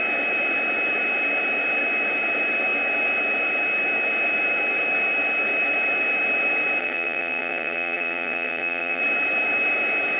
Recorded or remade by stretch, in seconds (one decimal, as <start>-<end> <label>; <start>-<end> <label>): 0.0-6.8 recorded; 6.8-9.0 remade; 9.0-10.2 recorded